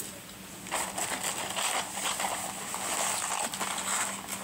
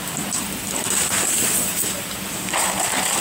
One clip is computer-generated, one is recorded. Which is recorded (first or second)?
first